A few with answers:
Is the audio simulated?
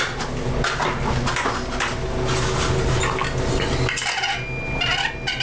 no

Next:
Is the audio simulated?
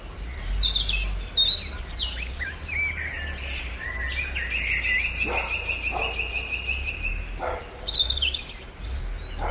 no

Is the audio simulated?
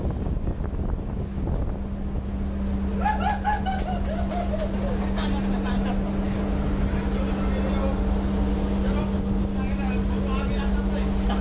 no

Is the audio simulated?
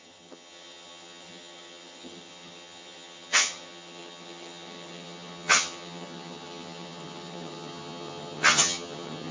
yes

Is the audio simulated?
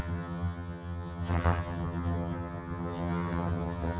yes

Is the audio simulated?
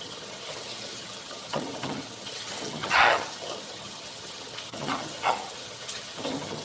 yes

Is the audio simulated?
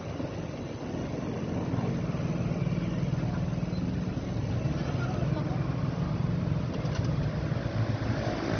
no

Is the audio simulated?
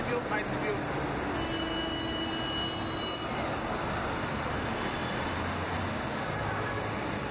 no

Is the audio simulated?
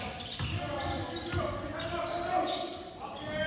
no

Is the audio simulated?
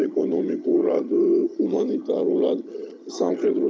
yes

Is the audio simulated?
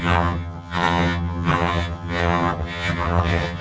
yes